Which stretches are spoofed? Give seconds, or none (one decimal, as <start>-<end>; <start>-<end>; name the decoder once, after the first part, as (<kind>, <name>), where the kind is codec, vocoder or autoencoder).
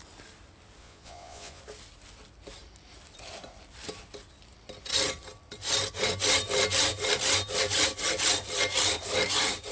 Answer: 0.8-1.6 (vocoder, Vocos)